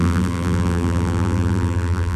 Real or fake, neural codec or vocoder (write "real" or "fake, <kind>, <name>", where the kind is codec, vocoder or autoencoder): fake, vocoder, BigVGAN v2